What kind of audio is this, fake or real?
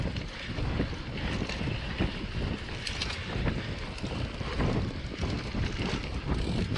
real